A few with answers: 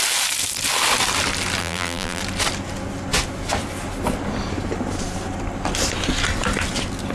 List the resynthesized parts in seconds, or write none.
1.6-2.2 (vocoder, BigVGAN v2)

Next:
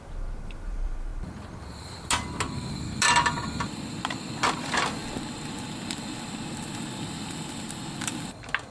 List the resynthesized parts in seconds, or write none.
none

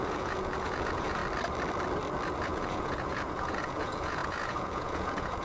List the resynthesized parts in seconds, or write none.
0.0-1.2 (vocoder, Vocos); 2.4-5.4